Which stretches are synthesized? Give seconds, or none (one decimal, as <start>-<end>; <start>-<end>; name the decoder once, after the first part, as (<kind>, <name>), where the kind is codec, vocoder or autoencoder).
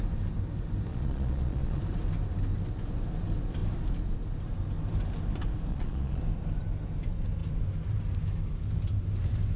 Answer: 0.9-1.8 (vocoder, Vocos); 5.7-6.2